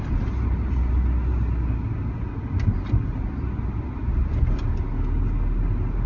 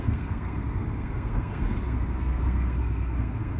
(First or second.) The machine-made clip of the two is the second